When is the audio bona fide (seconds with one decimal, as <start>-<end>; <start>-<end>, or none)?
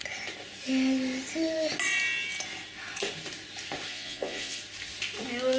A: 0.0-3.9; 4.6-5.6